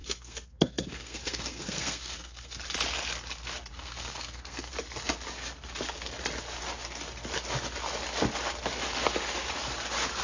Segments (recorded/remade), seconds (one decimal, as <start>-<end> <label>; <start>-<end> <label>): 0.0-2.6 remade; 2.6-3.7 recorded; 3.7-4.7 remade; 4.7-10.2 recorded

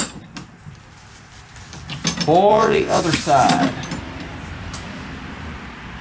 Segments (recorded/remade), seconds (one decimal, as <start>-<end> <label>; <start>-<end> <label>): 0.0-2.5 recorded; 2.5-3.0 remade; 3.0-6.0 recorded

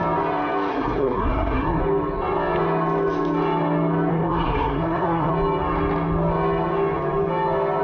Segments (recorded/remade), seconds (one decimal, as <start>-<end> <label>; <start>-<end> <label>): 0.0-0.7 recorded; 0.7-1.8 remade; 1.8-4.1 recorded; 4.1-5.3 remade; 5.3-7.8 recorded

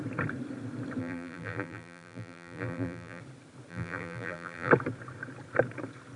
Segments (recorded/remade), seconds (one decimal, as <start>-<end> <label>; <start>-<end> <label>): 0.0-1.0 recorded; 1.0-3.2 remade; 3.2-3.7 recorded; 3.7-4.7 remade; 4.7-6.2 recorded

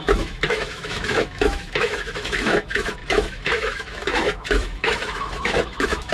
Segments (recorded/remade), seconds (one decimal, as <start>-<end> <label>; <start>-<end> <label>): 0.0-6.1 remade

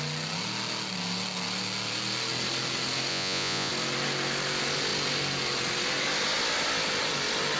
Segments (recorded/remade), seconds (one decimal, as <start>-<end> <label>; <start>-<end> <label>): 0.0-3.1 recorded; 3.1-3.7 remade; 3.7-7.6 recorded

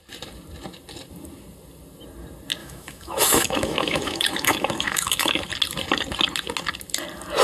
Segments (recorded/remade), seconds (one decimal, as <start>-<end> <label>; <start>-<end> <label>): 0.0-2.6 recorded; 2.6-5.5 remade; 5.5-7.4 recorded